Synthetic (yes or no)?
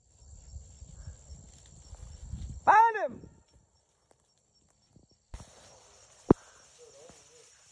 no